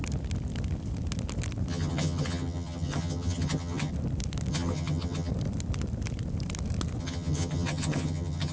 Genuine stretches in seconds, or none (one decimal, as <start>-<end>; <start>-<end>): 0.0-1.7; 3.9-4.5; 5.3-7.0